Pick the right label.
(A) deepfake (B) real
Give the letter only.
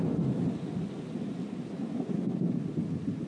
B